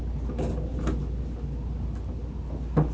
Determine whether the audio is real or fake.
real